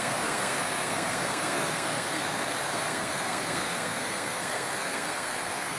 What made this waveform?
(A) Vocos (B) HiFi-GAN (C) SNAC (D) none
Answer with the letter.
C